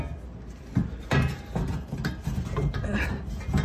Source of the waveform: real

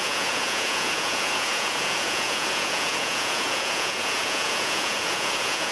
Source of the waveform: fake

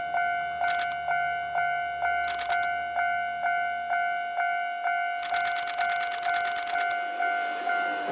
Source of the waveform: real